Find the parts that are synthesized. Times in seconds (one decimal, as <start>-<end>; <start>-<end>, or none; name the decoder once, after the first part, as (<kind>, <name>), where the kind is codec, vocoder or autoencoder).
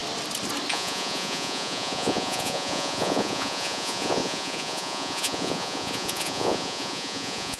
0.7-7.6 (vocoder, Vocos)